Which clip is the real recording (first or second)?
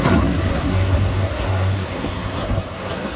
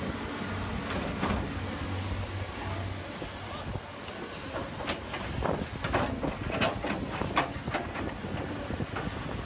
second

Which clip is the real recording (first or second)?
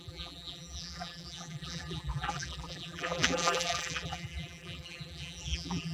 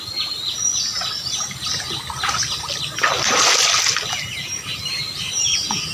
second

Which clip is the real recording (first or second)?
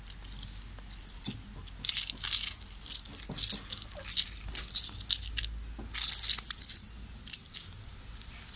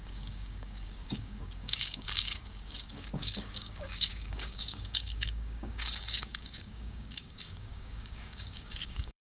first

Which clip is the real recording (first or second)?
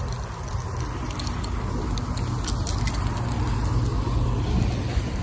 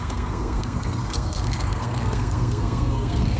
first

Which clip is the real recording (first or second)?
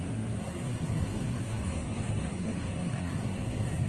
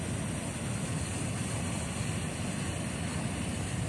second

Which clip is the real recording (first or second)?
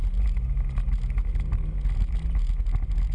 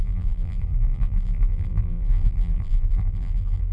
first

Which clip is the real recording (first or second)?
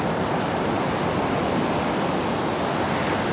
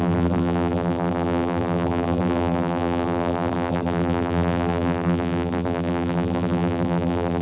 first